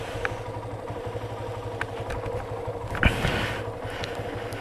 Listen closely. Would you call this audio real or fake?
real